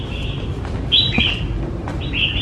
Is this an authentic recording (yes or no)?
yes